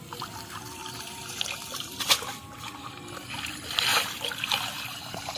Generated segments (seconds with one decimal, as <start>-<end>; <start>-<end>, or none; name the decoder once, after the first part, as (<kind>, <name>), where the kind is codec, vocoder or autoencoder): 0.8-1.9 (vocoder, BigVGAN v2); 3.9-5.4